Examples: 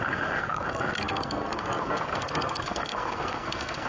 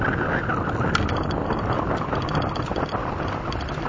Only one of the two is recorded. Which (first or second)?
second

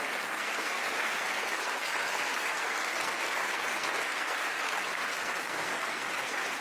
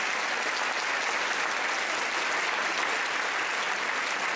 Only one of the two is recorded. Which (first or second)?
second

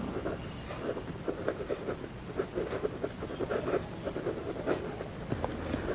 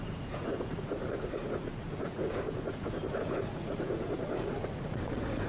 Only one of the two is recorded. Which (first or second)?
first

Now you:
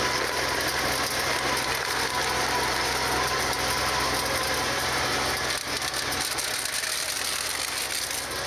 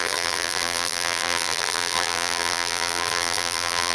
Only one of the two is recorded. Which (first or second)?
first